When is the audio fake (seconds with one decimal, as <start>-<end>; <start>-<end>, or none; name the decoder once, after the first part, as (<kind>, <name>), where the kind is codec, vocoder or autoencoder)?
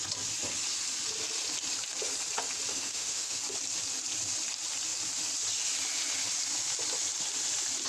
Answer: 2.7-3.4 (autoencoder, DAC-VAE)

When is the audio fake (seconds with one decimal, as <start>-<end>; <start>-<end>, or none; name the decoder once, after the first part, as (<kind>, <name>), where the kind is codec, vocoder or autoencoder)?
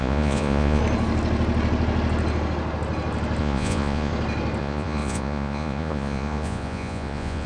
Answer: 0.0-0.8 (vocoder, Vocos); 3.4-4.1; 4.6-7.5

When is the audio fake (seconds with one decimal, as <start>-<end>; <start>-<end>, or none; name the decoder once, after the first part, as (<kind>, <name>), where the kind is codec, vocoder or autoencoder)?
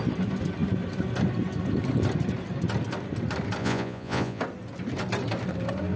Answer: 3.6-4.4 (vocoder, Vocos)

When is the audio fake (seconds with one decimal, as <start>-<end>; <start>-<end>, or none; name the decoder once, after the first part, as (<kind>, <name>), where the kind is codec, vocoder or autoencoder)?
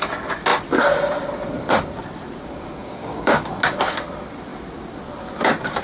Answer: 2.8-3.5 (codec, DAC)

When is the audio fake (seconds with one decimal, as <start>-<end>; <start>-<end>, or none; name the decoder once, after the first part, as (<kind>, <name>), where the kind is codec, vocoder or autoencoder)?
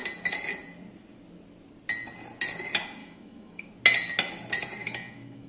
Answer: 3.0-3.7 (autoencoder, DAC-VAE); 4.8-5.5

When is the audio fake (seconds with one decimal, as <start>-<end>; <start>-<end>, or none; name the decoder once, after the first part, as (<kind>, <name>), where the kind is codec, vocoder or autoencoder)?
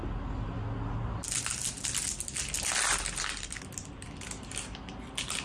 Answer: none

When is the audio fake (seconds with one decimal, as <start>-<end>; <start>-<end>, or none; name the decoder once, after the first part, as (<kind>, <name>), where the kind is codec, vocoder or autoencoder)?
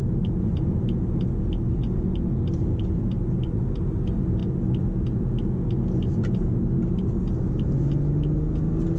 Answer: none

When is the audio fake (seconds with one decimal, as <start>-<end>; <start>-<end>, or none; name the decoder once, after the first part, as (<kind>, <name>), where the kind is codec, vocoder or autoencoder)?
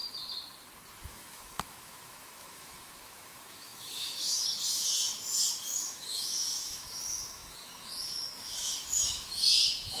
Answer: 1.0-10.0 (autoencoder, DAC-VAE)